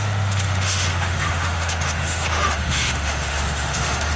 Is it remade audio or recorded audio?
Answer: remade